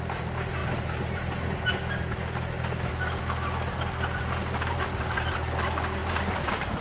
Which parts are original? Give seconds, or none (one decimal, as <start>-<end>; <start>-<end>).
0.0-4.4; 5.3-6.0